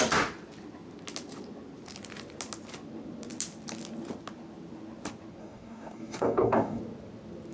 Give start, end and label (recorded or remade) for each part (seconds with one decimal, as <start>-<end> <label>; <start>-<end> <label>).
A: 0.0-5.4 recorded; 5.4-6.8 remade; 6.8-7.5 recorded